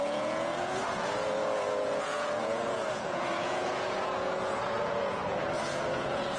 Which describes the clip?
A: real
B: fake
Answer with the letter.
B